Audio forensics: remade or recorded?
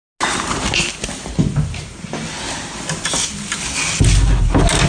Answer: recorded